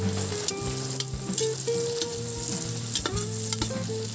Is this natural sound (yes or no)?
yes